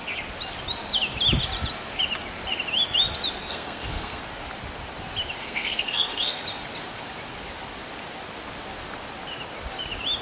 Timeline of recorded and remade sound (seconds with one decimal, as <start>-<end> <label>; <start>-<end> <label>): 0.0-3.4 recorded; 3.4-4.2 remade; 4.2-5.4 recorded; 5.4-6.4 remade; 6.4-10.2 recorded